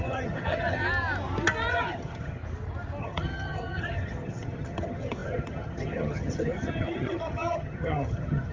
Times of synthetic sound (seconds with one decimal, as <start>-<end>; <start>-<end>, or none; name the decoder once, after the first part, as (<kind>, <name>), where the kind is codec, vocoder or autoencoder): 0.0-0.8 (vocoder, HiFi-GAN); 1.7-2.4; 3.0-8.5